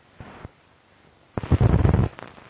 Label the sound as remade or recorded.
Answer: recorded